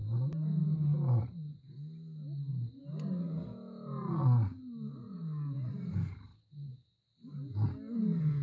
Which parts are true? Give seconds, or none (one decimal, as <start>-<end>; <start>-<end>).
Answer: 0.0-6.3; 7.0-8.4

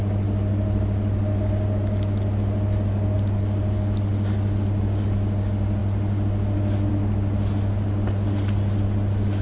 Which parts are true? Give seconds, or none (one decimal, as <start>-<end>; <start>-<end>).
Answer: 0.0-9.4

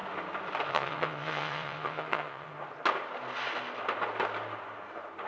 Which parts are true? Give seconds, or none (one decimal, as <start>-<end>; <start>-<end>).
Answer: 0.0-0.7; 2.5-5.3

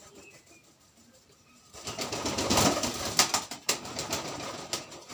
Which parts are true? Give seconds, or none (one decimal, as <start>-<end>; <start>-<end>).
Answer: 0.0-5.1